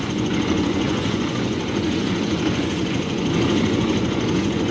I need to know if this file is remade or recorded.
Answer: remade